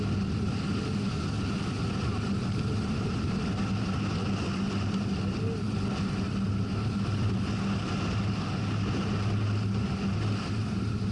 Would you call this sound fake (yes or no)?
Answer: no